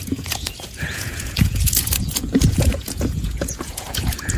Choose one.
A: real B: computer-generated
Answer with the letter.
B